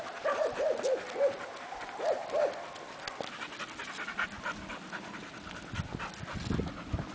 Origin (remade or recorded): recorded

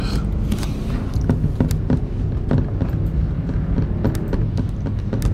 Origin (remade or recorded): recorded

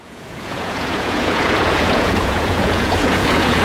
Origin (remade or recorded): remade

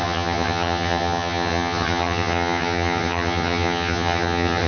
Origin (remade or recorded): remade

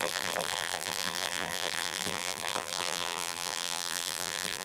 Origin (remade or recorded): remade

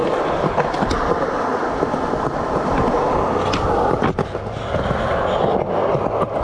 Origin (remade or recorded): recorded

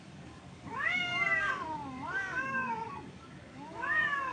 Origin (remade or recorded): remade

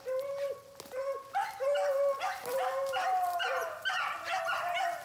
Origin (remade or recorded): recorded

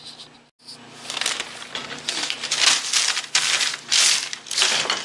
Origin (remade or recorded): recorded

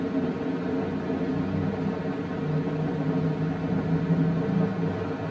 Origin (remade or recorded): recorded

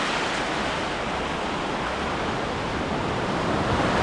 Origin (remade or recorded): recorded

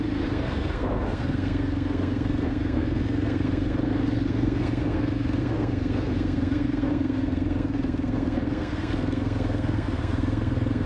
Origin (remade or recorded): remade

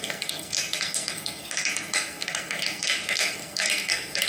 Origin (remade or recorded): remade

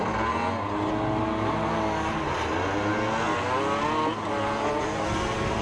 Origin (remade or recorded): recorded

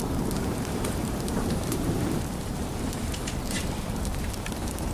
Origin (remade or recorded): remade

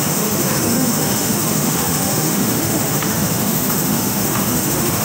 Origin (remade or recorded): remade